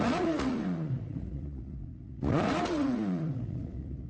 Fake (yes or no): yes